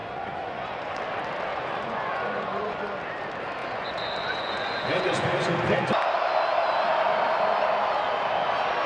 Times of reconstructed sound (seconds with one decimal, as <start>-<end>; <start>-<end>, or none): 0.0-1.0; 1.5-2.8; 3.6-5.5